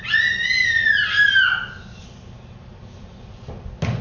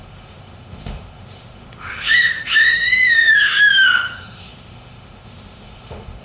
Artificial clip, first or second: second